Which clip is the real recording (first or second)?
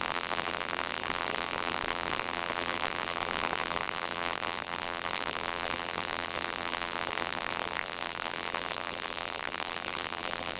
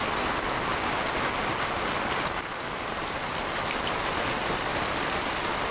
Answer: second